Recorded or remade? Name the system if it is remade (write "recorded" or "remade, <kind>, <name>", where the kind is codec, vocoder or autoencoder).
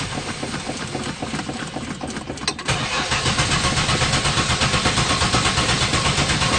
recorded